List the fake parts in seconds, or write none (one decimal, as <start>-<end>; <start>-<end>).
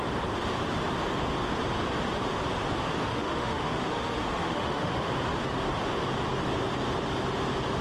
3.1-5.1